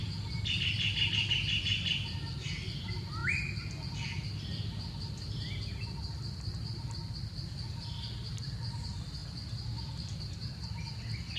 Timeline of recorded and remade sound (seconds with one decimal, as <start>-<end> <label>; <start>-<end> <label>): 0.0-11.4 recorded